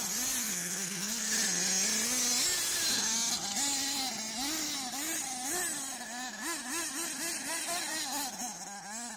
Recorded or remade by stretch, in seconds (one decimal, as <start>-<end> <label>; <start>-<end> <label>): 0.0-0.4 recorded; 0.4-1.3 remade; 1.3-9.2 recorded